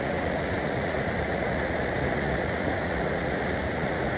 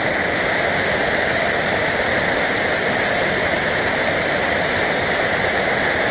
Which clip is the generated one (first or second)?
first